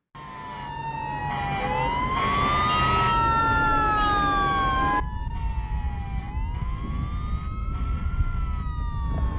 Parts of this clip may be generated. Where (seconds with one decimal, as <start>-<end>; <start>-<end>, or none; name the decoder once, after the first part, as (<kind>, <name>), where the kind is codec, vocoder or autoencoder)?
7.6-8.4 (vocoder, Vocos)